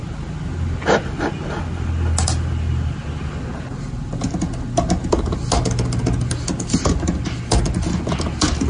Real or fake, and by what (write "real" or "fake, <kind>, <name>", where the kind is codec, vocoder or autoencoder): real